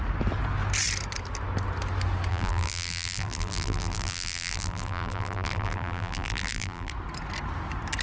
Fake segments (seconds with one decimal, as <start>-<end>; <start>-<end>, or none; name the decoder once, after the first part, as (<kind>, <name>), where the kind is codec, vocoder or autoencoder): 2.3-6.9 (vocoder, BigVGAN v2)